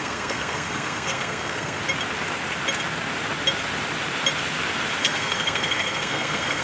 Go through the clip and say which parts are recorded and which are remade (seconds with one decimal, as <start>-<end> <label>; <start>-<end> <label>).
0.0-1.8 remade; 1.8-5.0 recorded; 5.0-6.6 remade